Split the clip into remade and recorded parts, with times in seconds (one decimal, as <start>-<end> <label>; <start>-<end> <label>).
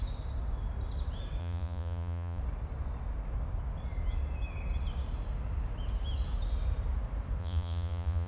0.0-1.4 recorded; 1.4-2.4 remade; 2.4-7.4 recorded; 7.4-8.3 remade